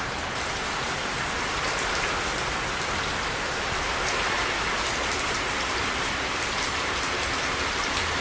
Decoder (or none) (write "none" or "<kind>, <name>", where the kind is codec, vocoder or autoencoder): none